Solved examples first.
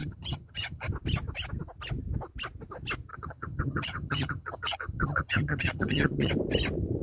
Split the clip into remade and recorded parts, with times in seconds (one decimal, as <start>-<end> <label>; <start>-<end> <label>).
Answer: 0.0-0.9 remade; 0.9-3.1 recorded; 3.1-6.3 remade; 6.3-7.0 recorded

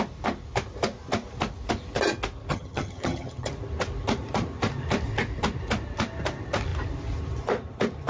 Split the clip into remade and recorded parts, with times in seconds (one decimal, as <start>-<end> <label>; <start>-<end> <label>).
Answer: 0.0-2.5 recorded; 2.5-3.5 remade; 3.5-8.1 recorded

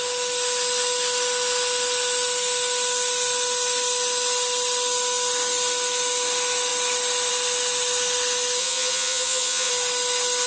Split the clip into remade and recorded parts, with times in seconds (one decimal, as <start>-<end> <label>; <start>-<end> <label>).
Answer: 0.0-8.6 recorded; 8.6-9.7 remade; 9.7-10.5 recorded

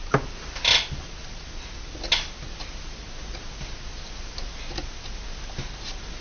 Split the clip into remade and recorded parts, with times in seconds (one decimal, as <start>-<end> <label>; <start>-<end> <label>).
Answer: 0.0-6.2 recorded

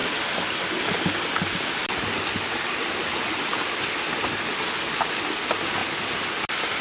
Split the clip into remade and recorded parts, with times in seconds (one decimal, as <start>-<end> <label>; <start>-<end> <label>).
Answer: 0.0-6.8 recorded

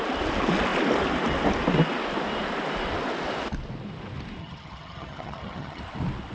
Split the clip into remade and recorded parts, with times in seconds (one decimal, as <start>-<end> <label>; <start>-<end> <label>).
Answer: 0.0-4.4 recorded; 4.4-5.8 remade; 5.8-6.3 recorded

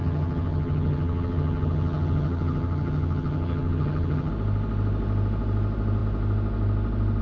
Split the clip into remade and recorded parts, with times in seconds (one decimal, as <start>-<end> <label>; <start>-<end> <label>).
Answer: 0.0-4.3 remade; 4.3-7.2 recorded

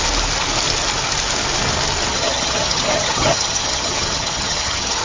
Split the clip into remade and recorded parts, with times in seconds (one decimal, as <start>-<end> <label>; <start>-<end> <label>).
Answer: 0.0-2.1 recorded; 2.1-5.0 remade